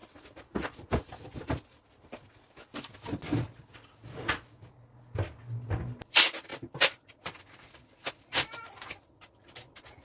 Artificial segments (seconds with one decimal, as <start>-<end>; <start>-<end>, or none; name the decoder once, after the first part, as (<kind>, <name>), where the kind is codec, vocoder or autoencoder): none